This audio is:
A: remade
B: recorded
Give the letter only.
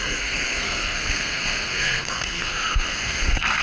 A